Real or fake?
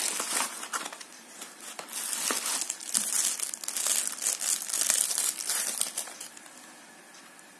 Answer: real